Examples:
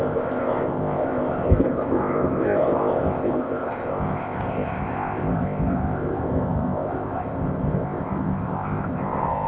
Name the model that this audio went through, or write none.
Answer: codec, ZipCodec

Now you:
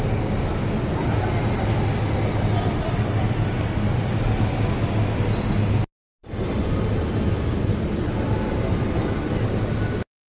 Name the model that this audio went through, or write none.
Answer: none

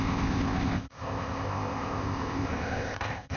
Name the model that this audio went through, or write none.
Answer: codec, ZipCodec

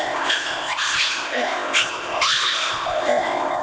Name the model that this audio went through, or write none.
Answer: codec, ZipCodec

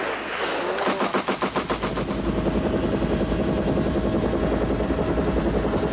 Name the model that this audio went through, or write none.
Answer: none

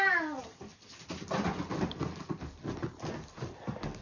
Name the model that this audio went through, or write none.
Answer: none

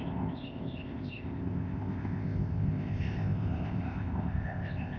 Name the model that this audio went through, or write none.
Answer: codec, ZipCodec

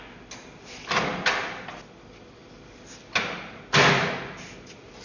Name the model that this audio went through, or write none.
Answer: none